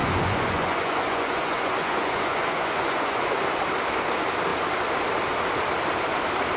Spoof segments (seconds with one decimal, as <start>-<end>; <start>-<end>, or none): 0.0-3.3